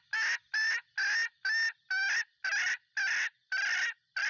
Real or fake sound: real